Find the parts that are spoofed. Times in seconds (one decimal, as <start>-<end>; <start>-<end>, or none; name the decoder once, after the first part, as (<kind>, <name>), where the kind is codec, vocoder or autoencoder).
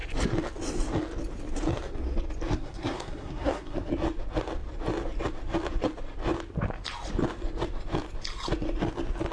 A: 2.5-3.9 (codec, SNAC)